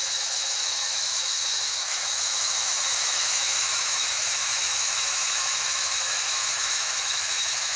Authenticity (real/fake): fake